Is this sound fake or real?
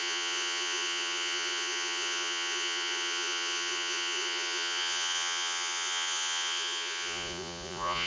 fake